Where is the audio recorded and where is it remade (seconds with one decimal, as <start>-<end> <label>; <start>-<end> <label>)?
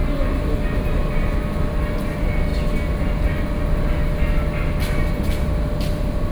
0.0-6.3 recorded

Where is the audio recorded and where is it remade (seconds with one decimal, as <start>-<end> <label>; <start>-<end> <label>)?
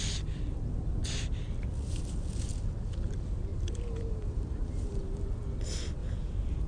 0.0-3.5 recorded; 3.5-5.3 remade; 5.3-6.0 recorded; 6.0-6.7 remade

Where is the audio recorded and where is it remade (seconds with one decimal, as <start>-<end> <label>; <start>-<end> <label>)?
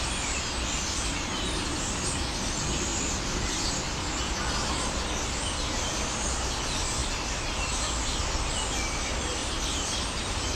0.0-2.9 recorded; 2.9-3.7 remade; 3.7-9.4 recorded; 9.4-10.6 remade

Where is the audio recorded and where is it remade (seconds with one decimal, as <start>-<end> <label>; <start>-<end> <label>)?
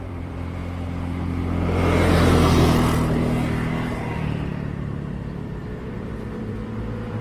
0.0-0.6 remade; 0.6-4.0 recorded; 4.0-7.2 remade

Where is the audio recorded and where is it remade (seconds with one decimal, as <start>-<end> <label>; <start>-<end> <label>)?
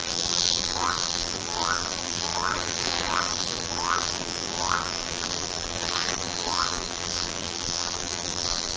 0.0-8.8 remade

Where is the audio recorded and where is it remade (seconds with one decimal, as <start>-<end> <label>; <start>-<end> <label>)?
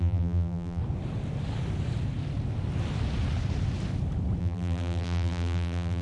0.0-0.8 remade; 0.8-4.4 recorded; 4.4-6.0 remade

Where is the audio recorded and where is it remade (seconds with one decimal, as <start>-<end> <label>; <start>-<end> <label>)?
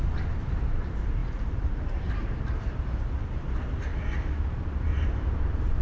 0.0-3.9 remade; 3.9-4.6 recorded; 4.6-5.8 remade